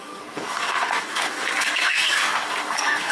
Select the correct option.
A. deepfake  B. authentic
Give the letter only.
A